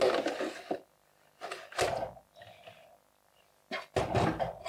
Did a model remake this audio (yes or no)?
no